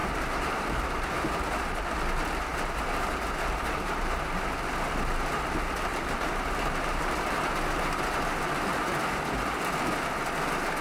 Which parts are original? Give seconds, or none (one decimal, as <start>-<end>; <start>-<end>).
1.8-2.5; 4.3-5.9; 7.0-10.8